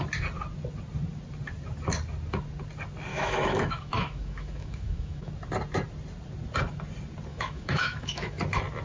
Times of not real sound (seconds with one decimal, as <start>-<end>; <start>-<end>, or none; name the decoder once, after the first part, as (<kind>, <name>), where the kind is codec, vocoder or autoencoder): 3.1-5.3 (autoencoder, DAC-VAE); 7.3-8.4

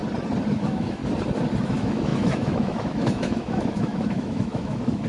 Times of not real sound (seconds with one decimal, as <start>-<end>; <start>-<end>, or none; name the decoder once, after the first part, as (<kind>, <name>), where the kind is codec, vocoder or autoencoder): 0.5-1.0 (autoencoder, DAC-VAE); 1.6-5.1

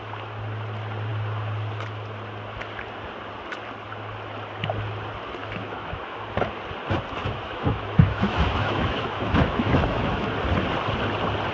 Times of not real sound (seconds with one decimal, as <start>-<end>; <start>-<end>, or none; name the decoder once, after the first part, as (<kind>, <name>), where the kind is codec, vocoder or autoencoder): 5.4-6.2 (autoencoder, DAC-VAE); 7.2-10.3

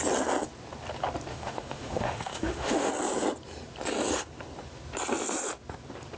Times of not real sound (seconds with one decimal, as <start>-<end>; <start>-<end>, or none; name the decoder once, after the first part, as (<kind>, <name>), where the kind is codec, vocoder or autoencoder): 1.3-2.9 (autoencoder, DAC-VAE)

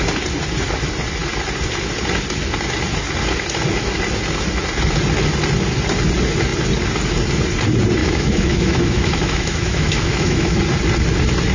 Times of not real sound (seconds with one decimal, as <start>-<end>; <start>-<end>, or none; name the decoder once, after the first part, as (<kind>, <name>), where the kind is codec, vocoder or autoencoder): 8.0-10.6 (autoencoder, DAC-VAE)

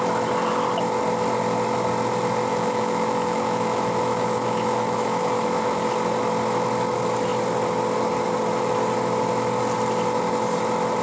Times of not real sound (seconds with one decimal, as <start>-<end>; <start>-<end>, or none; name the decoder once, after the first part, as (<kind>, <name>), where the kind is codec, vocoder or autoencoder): 2.5-5.8 (autoencoder, DAC-VAE)